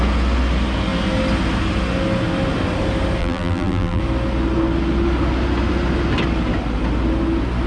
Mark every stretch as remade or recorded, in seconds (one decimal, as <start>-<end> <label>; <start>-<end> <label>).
0.0-3.2 recorded; 3.2-4.0 remade; 4.0-7.7 recorded